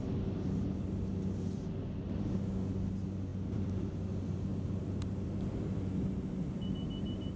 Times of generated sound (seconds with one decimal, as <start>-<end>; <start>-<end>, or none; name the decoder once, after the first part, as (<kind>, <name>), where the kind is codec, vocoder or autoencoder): 3.3-3.9 (vocoder, BigVGAN v2); 4.5-5.8